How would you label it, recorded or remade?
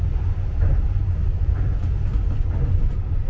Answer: recorded